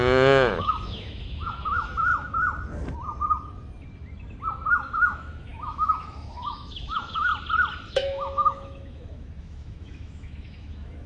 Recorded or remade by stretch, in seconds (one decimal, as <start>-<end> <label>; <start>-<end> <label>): 0.0-2.1 remade; 2.1-4.7 recorded; 4.7-7.3 remade; 7.3-7.9 recorded; 7.9-11.1 remade